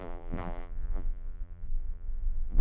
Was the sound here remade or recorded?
remade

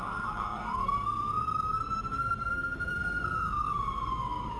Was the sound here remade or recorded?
remade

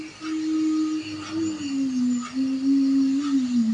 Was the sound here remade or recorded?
recorded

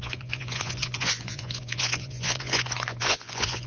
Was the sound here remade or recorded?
remade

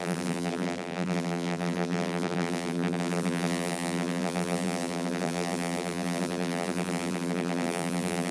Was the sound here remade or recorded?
remade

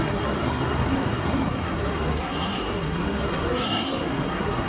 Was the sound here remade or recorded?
remade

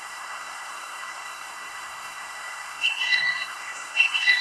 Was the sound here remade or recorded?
remade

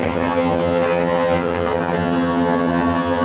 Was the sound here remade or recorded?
remade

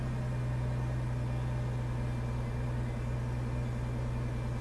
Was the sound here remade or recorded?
recorded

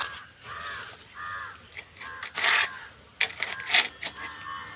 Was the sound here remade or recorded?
recorded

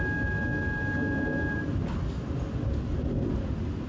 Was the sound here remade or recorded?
recorded